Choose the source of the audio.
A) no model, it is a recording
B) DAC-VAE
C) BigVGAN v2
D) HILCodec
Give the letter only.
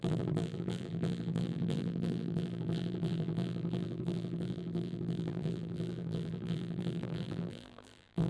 C